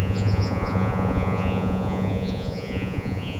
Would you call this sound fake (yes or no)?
yes